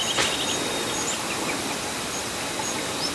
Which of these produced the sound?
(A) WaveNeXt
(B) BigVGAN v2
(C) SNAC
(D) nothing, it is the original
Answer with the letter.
D